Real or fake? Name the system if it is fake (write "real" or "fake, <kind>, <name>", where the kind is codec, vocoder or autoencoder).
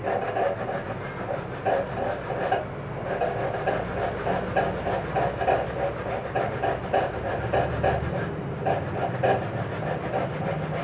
real